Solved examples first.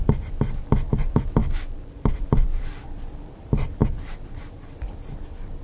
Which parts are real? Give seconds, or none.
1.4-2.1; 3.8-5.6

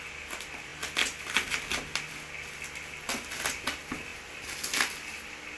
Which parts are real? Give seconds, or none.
0.0-5.6

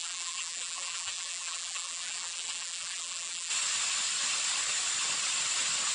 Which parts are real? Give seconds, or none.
3.5-5.9

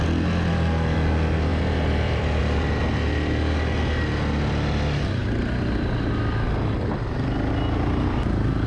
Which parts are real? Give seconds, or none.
0.0-1.5; 2.4-8.7

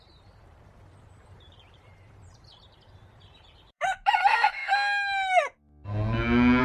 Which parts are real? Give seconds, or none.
4.6-6.6

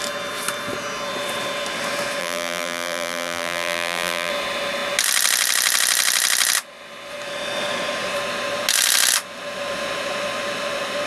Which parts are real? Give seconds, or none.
0.0-2.2; 4.3-11.1

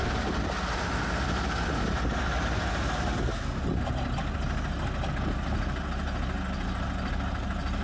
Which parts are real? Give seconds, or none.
0.0-7.8

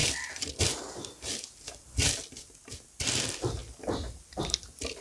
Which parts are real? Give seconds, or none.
3.6-4.4